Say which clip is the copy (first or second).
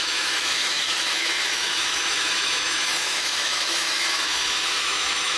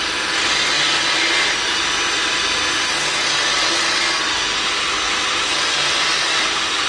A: first